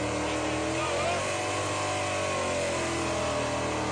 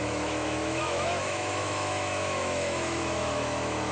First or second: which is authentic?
first